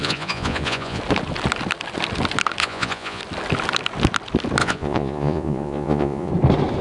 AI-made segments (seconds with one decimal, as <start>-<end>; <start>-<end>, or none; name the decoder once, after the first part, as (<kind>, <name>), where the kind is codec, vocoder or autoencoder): 0.0-1.0 (vocoder, Vocos); 2.6-3.2; 4.6-6.3